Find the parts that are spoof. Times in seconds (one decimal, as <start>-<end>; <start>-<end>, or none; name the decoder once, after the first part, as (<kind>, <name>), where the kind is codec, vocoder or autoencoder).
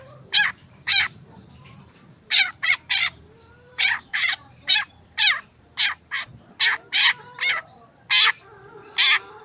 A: 0.0-6.3 (vocoder, BigVGAN v2)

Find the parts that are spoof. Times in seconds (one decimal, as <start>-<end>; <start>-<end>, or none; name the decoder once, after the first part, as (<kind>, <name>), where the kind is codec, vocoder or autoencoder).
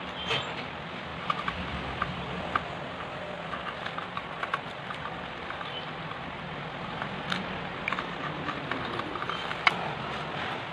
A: 0.0-1.1 (vocoder, BigVGAN v2); 2.0-10.7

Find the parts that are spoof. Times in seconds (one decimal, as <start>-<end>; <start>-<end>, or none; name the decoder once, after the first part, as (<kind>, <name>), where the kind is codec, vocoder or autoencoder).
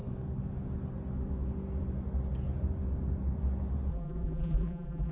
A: 3.9-5.1 (vocoder, BigVGAN v2)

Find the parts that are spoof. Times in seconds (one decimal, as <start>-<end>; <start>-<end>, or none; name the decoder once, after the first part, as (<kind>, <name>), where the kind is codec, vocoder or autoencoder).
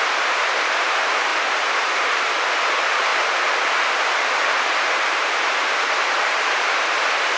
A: 0.0-3.1 (vocoder, BigVGAN v2); 4.5-7.4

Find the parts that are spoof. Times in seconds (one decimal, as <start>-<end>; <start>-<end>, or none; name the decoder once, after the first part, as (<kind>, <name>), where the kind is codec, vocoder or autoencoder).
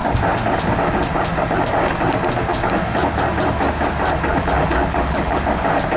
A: 4.3-5.4 (vocoder, BigVGAN v2)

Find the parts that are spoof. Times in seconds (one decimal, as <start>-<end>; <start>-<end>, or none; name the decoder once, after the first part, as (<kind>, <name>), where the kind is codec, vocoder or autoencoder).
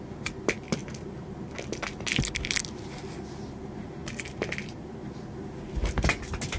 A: 0.8-1.5 (vocoder, BigVGAN v2); 4.0-5.1